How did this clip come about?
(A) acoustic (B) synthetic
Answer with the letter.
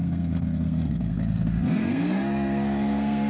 B